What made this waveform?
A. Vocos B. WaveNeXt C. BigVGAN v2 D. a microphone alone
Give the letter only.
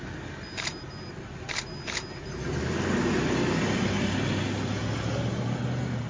D